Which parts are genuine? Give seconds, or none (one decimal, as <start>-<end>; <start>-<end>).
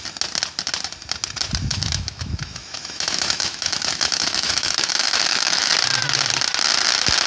0.0-1.7; 5.7-7.3